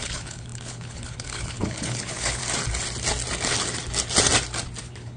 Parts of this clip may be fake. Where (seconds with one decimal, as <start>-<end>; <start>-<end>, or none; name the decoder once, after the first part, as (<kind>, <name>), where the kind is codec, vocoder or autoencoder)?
0.0-2.4 (codec, HILCodec); 4.8-5.2